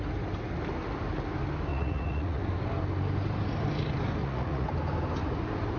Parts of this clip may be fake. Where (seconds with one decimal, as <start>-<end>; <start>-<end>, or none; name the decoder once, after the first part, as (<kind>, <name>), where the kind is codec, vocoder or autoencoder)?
1.7-2.4 (vocoder, Vocos); 4.2-4.7